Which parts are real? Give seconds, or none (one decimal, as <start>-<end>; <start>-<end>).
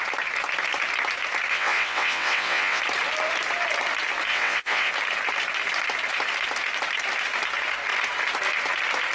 0.0-1.5; 2.8-4.3; 4.9-9.1